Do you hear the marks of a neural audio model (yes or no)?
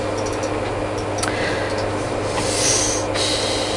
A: no